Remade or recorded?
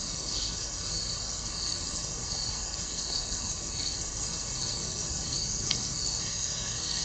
remade